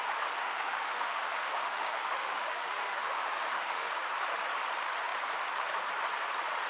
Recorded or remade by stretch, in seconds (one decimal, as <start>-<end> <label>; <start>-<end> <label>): 0.0-0.4 recorded; 0.4-3.9 remade; 3.9-6.7 recorded